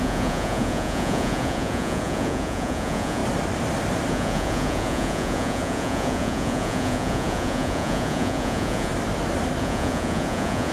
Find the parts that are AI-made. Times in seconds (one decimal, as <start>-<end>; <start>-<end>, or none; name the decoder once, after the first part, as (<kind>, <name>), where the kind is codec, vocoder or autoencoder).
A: 0.0-3.2 (vocoder, Vocos); 4.1-8.9; 9.6-10.7